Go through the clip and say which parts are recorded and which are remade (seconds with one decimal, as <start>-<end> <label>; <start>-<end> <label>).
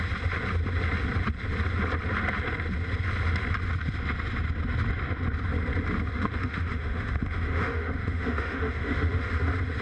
0.0-6.1 recorded; 6.1-9.3 remade; 9.3-9.8 recorded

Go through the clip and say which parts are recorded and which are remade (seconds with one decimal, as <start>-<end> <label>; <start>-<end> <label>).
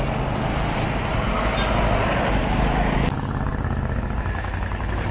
0.0-5.1 recorded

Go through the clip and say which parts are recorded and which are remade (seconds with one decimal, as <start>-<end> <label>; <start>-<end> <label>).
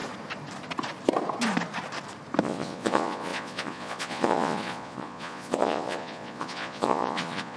0.0-2.4 recorded; 2.4-7.6 remade